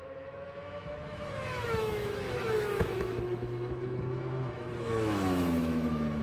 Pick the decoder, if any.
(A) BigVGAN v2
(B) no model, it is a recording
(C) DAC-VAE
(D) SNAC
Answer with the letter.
C